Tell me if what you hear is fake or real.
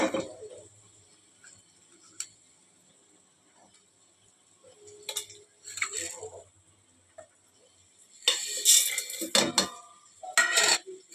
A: real